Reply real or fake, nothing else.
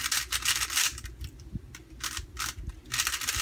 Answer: real